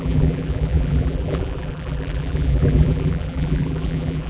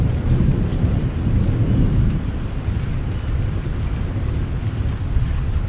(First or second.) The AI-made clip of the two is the first